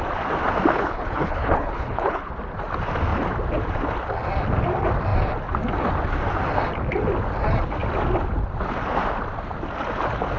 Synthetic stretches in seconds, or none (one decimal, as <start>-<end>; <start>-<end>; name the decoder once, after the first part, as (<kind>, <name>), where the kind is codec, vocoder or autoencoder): 0.7-2.3 (codec, HILCodec)